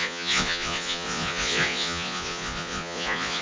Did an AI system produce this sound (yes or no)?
yes